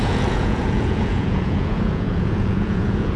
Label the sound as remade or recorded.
remade